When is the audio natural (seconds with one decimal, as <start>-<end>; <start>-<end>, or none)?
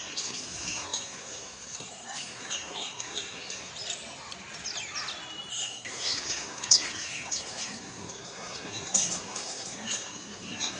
3.7-5.5